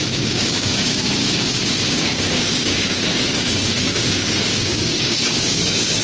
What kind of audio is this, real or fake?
fake